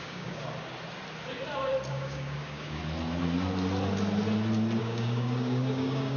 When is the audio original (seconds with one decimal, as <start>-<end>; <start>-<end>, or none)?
0.4-1.9; 2.8-4.8